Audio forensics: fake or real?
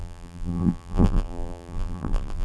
fake